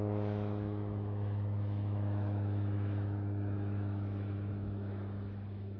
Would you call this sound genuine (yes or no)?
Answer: no